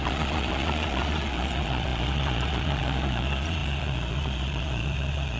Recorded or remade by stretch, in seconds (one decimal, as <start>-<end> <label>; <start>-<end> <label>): 0.0-5.4 remade